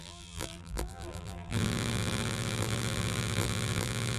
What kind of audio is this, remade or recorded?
remade